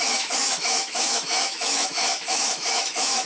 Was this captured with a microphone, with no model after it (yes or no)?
no